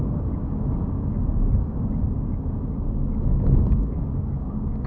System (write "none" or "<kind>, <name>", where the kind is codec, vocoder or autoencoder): codec, DAC